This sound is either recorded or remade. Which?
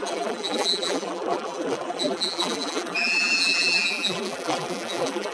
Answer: remade